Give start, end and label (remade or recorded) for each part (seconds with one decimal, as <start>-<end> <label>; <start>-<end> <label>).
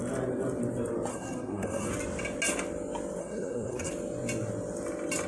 0.0-1.1 recorded; 1.1-1.9 remade; 1.9-3.2 recorded; 3.2-3.9 remade; 3.9-5.3 recorded